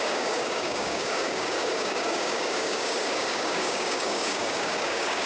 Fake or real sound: fake